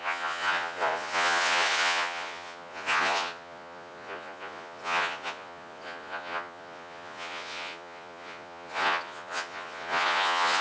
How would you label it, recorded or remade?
remade